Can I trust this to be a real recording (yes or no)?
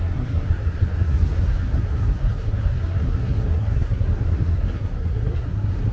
no